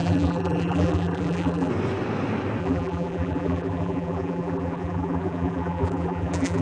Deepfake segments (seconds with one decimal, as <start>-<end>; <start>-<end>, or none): 0.0-1.7; 2.6-6.6